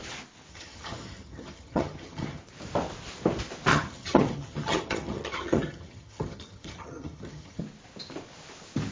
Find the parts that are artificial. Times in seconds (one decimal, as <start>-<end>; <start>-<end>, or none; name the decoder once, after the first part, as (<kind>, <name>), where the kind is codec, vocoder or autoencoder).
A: 0.5-2.4 (vocoder, HiFi-GAN); 3.7-7.6